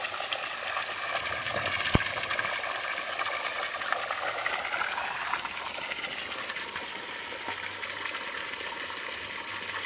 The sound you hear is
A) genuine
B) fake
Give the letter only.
A